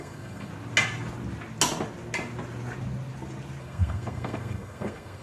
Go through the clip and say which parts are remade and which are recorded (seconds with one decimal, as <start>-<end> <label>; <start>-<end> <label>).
0.0-0.5 remade; 0.5-3.6 recorded; 3.6-5.2 remade